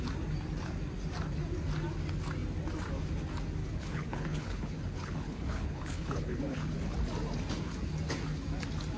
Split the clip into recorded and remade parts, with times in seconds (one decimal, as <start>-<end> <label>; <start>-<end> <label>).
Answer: 0.0-3.6 recorded; 3.6-6.8 remade; 6.8-9.0 recorded